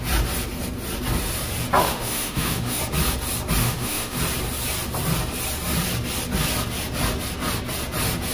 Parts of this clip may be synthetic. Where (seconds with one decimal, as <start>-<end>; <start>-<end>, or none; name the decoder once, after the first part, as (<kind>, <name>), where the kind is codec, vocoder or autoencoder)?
1.8-2.8 (autoencoder, DAC-VAE); 3.6-4.2